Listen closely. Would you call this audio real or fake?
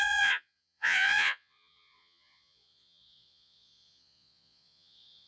fake